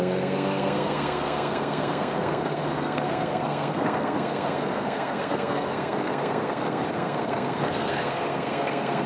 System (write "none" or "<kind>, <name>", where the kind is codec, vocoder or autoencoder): codec, SNAC